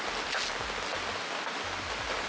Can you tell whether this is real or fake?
real